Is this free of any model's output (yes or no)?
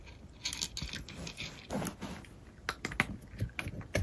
yes